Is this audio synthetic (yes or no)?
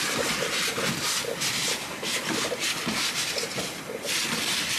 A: no